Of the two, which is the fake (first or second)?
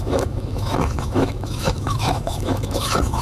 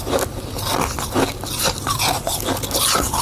first